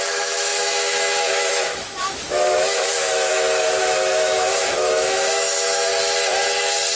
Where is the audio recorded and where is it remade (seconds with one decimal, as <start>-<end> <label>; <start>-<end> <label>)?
0.0-5.9 remade; 5.9-7.0 recorded